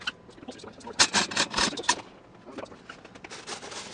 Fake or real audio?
real